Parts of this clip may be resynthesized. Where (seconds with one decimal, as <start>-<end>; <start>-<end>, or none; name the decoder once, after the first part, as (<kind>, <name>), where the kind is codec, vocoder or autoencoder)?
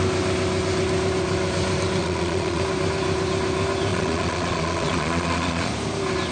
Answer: 2.0-2.6 (vocoder, Vocos); 3.9-5.7